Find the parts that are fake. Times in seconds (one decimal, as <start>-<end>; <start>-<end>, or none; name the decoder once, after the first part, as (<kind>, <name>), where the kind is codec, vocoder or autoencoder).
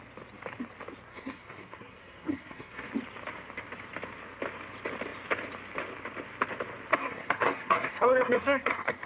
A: 1.1-2.9 (codec, SNAC); 6.9-9.1